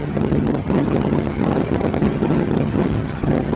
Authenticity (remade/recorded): remade